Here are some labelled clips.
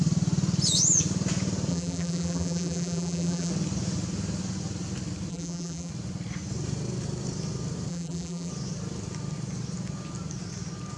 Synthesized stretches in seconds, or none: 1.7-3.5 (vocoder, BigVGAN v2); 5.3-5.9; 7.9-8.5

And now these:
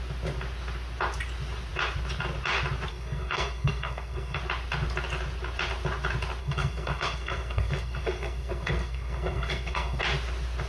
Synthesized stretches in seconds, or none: 2.9-4.4 (codec, SNAC); 6.4-10.0

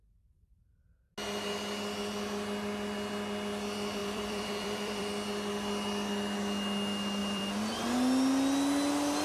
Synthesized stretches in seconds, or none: 4.0-5.1 (vocoder, BigVGAN v2); 7.2-7.9

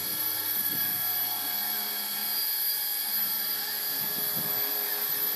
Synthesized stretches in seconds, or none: 0.0-0.8 (vocoder, BigVGAN v2)

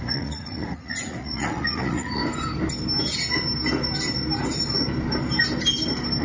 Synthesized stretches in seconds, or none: 0.0-2.2 (vocoder, Vocos)

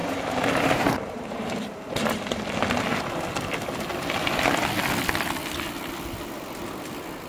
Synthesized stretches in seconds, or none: 0.0-1.9 (vocoder, BigVGAN v2)